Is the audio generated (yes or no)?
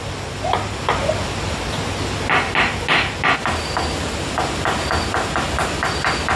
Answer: no